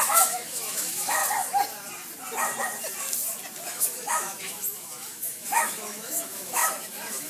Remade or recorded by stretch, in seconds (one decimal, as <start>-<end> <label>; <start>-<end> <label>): 0.0-1.2 remade; 1.2-3.7 recorded; 3.7-7.3 remade